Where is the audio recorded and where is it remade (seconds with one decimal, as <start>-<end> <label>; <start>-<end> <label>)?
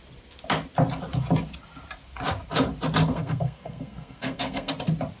0.0-3.1 recorded; 3.1-4.7 remade; 4.7-5.2 recorded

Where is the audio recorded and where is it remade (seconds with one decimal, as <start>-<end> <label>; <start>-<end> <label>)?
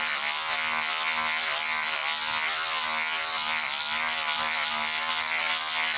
0.0-6.0 recorded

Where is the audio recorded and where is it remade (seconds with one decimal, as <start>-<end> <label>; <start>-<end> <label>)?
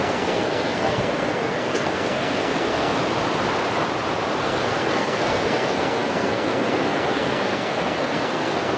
0.0-3.0 remade; 3.0-4.4 recorded; 4.4-8.8 remade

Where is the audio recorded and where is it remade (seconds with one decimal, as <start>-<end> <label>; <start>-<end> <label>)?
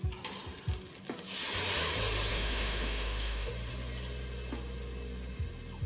0.0-2.3 recorded; 2.3-3.5 remade; 3.5-5.9 recorded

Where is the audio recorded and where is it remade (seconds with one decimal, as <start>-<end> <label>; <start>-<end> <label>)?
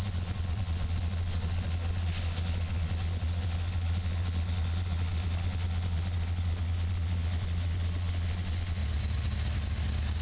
0.0-8.8 remade; 8.8-10.2 recorded